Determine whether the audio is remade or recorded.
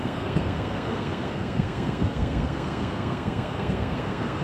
remade